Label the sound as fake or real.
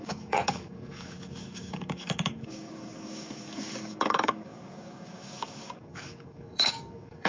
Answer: fake